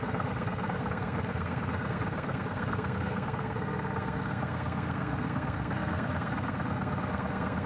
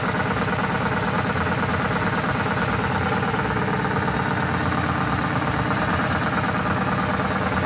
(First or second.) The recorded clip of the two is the second